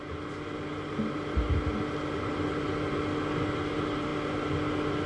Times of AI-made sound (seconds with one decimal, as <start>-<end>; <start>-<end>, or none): none